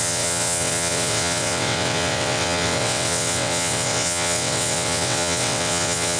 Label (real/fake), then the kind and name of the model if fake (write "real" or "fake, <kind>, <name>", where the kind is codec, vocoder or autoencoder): fake, vocoder, WaveNeXt